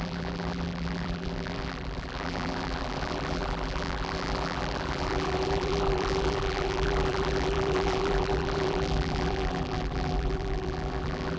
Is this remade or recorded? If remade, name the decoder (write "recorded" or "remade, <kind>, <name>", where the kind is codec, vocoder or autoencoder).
remade, vocoder, BigVGAN v2